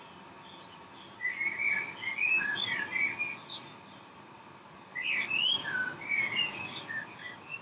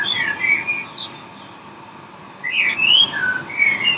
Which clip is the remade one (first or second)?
first